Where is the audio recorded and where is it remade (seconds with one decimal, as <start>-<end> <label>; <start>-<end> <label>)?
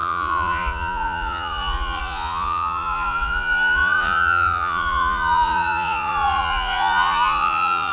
0.0-7.9 remade